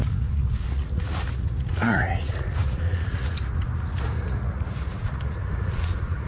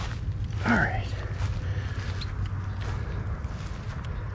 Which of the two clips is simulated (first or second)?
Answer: first